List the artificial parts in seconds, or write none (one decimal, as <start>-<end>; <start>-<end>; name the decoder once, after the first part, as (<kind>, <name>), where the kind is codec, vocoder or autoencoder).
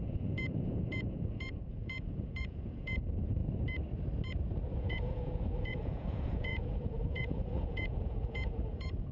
0.0-3.4 (vocoder, Vocos); 4.7-9.1